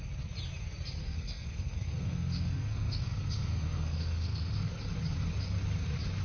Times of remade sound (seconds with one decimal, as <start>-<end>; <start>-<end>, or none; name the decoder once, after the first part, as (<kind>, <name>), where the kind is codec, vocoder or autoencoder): 1.0-4.7 (codec, SNAC)